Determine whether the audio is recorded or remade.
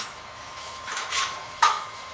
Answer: remade